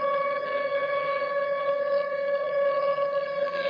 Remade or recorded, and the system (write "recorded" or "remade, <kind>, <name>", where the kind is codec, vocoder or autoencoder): remade, vocoder, HiFi-GAN